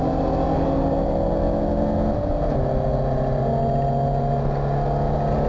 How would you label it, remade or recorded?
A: recorded